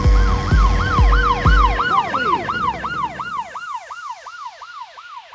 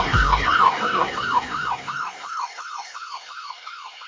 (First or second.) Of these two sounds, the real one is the first